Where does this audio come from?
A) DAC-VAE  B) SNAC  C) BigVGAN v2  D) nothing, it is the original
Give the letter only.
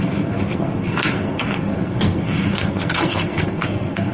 B